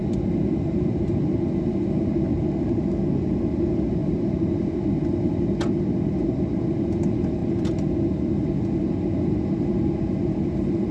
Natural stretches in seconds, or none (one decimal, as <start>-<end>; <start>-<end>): 0.0-10.9